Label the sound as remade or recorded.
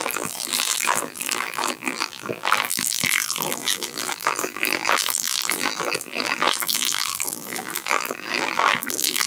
remade